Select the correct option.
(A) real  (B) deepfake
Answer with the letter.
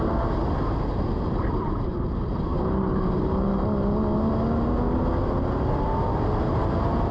A